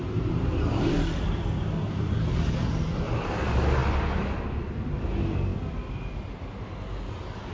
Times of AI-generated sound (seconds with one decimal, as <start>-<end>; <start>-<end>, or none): 0.0-3.1